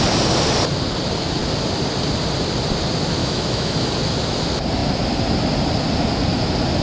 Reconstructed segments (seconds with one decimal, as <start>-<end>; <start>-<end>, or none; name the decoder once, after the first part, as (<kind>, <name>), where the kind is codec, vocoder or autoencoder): 3.2-3.9 (autoencoder, DAC-VAE)